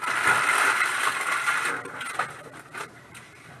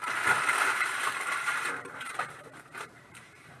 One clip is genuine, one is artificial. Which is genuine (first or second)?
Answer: first